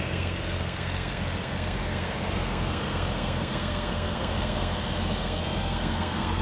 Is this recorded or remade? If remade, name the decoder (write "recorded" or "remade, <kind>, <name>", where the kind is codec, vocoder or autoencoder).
remade, codec, SNAC